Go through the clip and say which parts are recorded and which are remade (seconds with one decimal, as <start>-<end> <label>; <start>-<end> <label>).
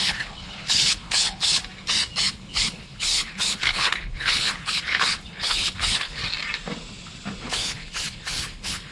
0.0-1.6 remade; 1.6-2.3 recorded; 2.3-6.2 remade; 6.2-7.4 recorded; 7.4-8.9 remade